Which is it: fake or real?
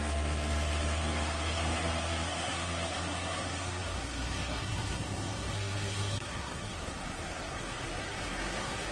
fake